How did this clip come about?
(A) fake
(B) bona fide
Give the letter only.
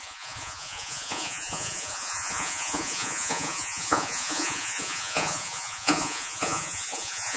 A